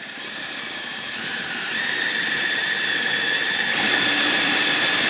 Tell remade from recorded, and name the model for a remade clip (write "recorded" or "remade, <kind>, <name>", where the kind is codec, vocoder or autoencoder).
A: remade, vocoder, BigVGAN v2